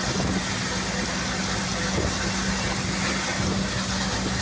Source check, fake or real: real